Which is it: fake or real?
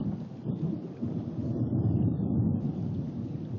real